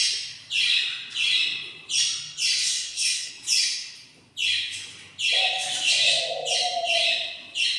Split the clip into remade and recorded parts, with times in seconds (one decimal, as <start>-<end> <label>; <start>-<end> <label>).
0.0-2.6 recorded; 2.6-3.3 remade; 3.3-7.8 recorded

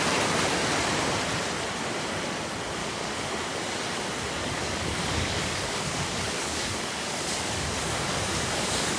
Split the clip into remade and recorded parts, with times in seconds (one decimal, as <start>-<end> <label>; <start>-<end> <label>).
0.0-2.8 recorded; 2.8-3.3 remade; 3.3-4.4 recorded; 4.4-9.0 remade

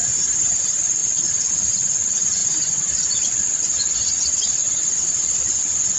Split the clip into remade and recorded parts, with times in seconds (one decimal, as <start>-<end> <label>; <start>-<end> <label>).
0.0-0.6 remade; 0.6-2.4 recorded; 2.4-3.1 remade; 3.1-4.6 recorded; 4.6-5.6 remade; 5.6-6.0 recorded

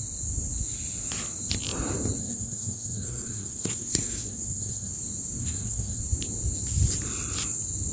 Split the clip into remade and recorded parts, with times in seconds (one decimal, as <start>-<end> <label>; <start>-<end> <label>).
0.0-2.2 recorded; 2.2-4.9 remade; 4.9-5.4 recorded; 5.4-6.0 remade; 6.0-7.9 recorded